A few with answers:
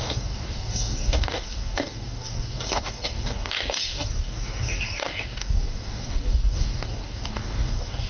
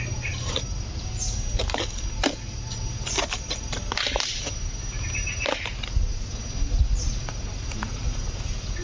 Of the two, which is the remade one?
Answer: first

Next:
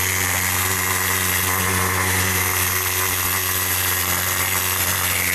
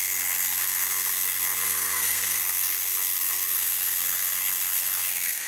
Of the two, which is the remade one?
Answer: second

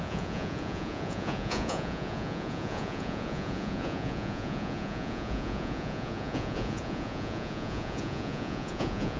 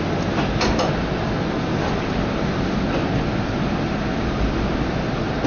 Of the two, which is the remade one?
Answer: first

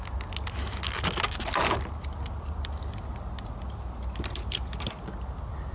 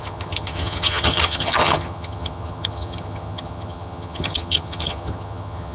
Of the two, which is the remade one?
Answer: second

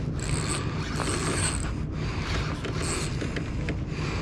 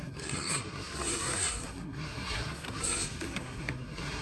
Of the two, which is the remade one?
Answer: second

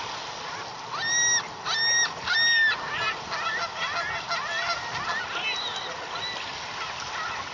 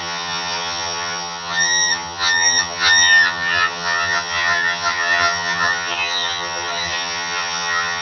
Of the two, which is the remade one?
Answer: second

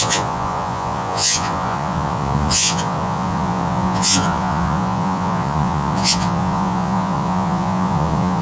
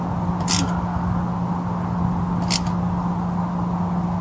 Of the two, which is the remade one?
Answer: first